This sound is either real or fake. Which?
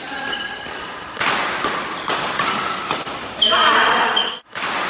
real